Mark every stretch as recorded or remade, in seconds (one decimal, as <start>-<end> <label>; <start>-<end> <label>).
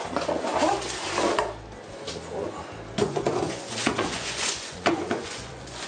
0.0-0.5 remade; 0.5-2.9 recorded; 2.9-5.9 remade